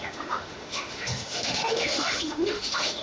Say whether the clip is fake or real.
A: fake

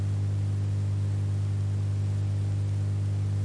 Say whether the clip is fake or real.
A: real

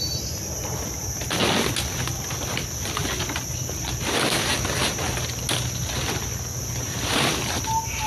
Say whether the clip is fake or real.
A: real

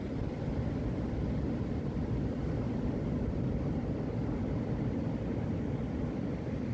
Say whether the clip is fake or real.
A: real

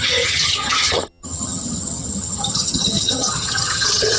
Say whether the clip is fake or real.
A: fake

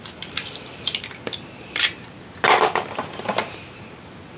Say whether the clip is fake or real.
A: real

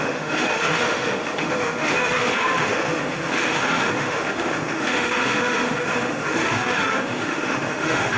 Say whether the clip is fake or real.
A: fake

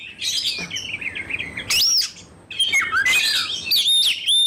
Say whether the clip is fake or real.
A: real